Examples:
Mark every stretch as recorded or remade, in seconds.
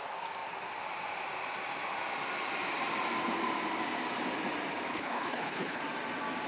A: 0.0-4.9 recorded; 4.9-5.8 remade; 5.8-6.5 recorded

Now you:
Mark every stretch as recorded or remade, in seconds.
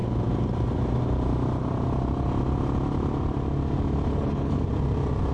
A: 0.0-4.1 recorded; 4.1-4.6 remade; 4.6-5.3 recorded